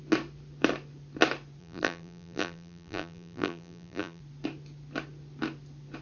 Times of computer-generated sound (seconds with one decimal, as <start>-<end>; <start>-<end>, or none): 1.6-4.2